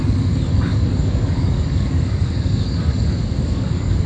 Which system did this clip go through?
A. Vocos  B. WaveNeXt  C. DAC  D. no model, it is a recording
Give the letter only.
C